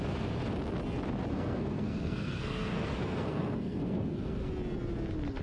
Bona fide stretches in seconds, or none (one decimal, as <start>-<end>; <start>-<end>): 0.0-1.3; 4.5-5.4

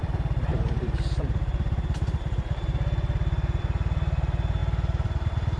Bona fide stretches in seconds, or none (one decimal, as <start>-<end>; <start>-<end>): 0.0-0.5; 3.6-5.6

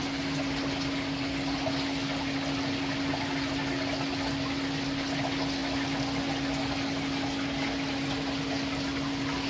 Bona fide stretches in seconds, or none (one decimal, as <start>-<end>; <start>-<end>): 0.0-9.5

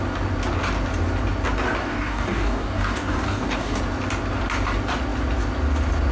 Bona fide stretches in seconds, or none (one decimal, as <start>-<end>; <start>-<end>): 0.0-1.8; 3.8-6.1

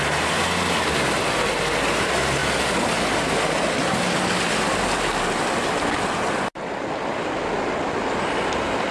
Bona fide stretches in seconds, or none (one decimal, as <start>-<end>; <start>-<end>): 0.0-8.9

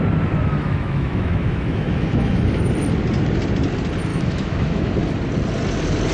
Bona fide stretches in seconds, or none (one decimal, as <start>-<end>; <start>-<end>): 0.0-0.6; 2.6-4.1; 4.9-6.1